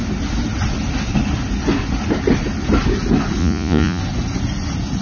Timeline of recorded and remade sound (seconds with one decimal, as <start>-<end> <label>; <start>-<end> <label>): 0.0-3.4 recorded; 3.4-4.0 remade; 4.0-5.0 recorded